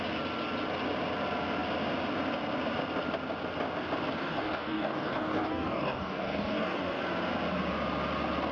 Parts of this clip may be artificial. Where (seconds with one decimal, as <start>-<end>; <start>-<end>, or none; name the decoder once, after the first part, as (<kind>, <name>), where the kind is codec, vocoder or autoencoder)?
4.2-7.0 (codec, DAC)